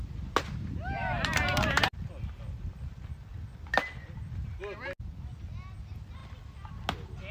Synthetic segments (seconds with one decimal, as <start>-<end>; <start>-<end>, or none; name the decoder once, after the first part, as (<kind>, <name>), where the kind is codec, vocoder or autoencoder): none